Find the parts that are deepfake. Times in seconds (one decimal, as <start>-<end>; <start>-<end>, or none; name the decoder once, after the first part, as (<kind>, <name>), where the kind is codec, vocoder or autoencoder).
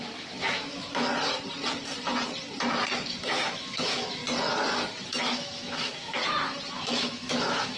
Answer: 0.0-1.1 (autoencoder, DAC-VAE); 3.2-4.2; 5.2-6.2; 6.7-7.8